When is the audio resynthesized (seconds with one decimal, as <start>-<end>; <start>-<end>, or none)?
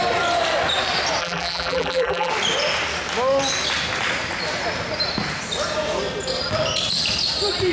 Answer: 1.2-2.3